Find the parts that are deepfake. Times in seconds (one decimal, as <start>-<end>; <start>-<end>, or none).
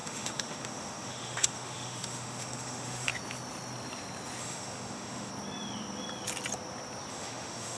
0.0-3.1; 4.4-5.3; 7.1-7.8